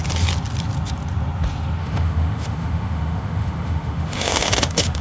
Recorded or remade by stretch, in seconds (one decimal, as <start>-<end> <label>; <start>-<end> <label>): 0.0-1.8 recorded; 1.8-5.0 remade